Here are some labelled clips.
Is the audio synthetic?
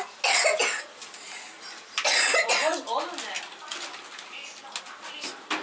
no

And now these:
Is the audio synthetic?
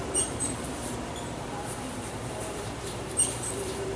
yes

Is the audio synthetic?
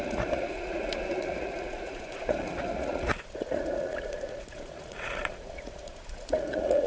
yes